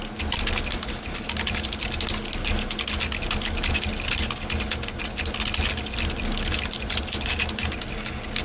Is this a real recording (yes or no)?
yes